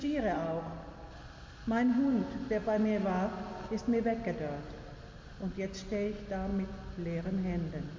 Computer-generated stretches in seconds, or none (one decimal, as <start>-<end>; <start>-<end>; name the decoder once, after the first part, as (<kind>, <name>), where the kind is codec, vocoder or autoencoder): none